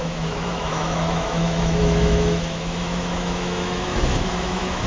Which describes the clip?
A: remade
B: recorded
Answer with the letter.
A